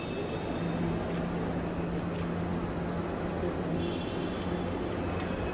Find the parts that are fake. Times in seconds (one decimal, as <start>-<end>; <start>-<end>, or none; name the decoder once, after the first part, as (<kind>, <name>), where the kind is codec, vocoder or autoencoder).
none

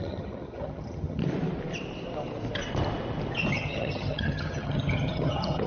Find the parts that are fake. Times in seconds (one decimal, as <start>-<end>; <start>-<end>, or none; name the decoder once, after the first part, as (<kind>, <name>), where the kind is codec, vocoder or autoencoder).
0.0-1.2 (vocoder, HiFi-GAN); 3.5-5.7

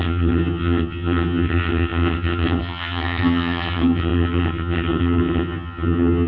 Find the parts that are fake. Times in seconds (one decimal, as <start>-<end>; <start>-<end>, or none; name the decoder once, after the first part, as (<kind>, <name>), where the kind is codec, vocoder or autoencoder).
0.0-6.3 (vocoder, HiFi-GAN)

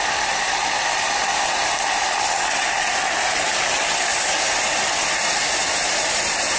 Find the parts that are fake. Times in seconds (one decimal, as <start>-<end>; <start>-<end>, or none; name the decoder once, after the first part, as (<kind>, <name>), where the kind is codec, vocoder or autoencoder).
none

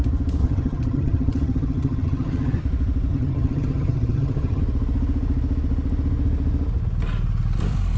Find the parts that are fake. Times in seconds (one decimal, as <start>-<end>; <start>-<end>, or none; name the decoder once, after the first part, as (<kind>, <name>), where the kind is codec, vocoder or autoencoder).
0.4-2.6 (vocoder, HiFi-GAN); 3.1-4.6

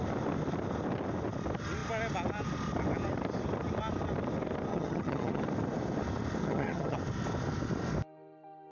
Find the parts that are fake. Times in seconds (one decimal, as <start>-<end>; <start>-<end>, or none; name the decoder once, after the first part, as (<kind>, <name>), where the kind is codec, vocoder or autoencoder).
4.7-5.4 (vocoder, HiFi-GAN); 6.4-7.0

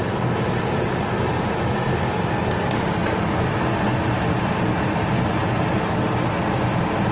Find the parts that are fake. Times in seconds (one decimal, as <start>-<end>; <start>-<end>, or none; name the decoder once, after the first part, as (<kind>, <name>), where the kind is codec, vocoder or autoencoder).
none

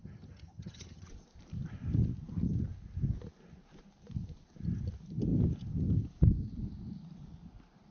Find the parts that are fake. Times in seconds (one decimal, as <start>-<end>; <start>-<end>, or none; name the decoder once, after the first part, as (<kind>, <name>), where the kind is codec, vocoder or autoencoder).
0.0-1.1 (vocoder, HiFi-GAN)